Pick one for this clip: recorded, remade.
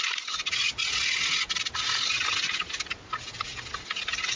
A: recorded